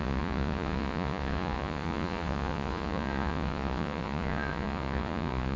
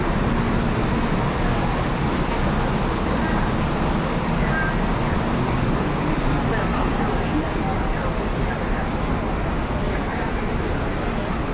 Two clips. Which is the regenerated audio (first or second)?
first